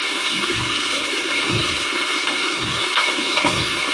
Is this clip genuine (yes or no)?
no